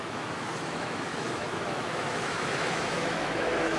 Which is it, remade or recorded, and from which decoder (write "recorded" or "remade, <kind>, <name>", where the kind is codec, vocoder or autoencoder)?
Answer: remade, autoencoder, DAC-VAE